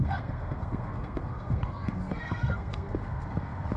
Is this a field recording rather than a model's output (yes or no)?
no